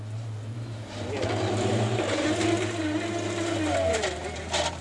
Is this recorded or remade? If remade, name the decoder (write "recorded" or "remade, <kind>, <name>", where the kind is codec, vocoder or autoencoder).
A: recorded